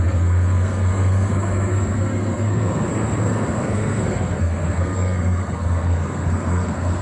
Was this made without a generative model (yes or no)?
no